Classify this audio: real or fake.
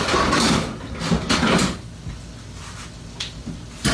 real